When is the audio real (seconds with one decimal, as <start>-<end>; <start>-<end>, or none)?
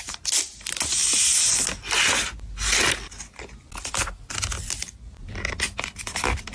0.0-6.5